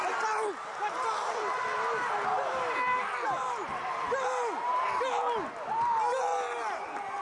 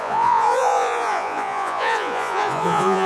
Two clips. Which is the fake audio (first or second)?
second